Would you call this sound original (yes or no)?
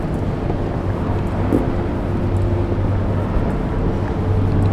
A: yes